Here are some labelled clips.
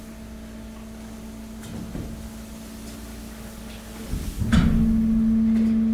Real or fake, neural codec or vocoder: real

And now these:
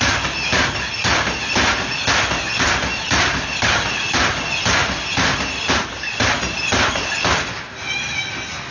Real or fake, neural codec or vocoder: real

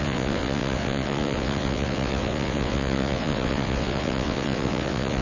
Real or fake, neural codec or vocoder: fake, vocoder, WaveNeXt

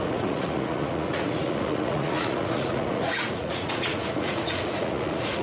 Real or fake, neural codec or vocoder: fake, vocoder, Vocos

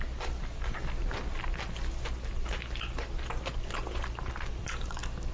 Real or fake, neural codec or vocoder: real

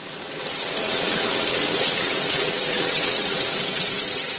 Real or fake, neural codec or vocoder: fake, vocoder, WaveNeXt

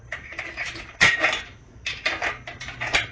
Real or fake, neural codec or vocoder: fake, vocoder, BigVGAN v2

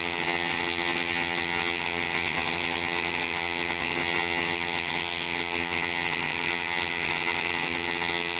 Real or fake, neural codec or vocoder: fake, vocoder, HiFi-GAN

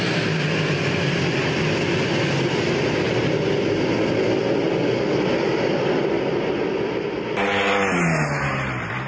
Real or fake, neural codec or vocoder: real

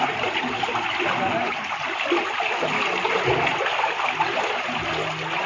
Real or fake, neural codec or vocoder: real